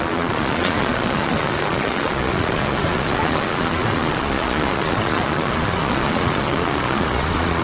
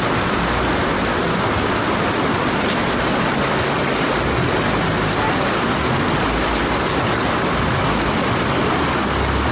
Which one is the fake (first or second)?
first